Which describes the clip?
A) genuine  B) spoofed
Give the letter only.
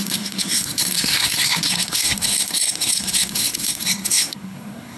B